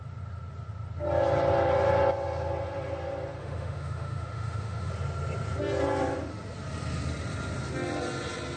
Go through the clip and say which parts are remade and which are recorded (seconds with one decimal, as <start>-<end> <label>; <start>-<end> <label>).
0.0-3.4 recorded; 3.4-4.9 remade; 4.9-8.6 recorded